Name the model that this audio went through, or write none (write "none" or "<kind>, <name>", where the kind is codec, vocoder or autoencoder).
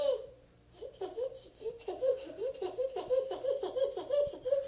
vocoder, BigVGAN v2